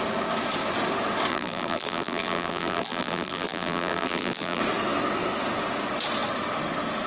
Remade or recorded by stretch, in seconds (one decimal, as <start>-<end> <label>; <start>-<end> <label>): 0.0-1.3 recorded; 1.3-4.6 remade; 4.6-7.1 recorded